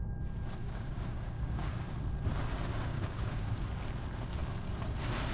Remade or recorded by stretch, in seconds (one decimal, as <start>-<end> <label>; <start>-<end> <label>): 0.0-0.6 recorded; 0.6-1.7 remade; 1.7-2.9 recorded; 2.9-3.6 remade; 3.6-5.3 recorded